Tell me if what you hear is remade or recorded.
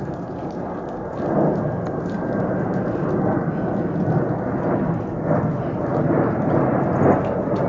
recorded